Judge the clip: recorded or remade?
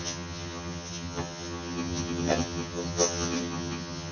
remade